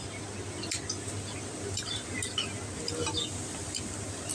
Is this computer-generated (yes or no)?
no